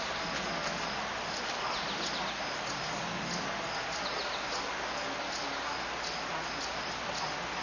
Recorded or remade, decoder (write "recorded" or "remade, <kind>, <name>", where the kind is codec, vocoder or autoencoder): recorded